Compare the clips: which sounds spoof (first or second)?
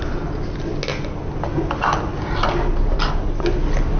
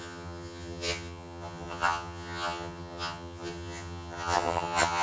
second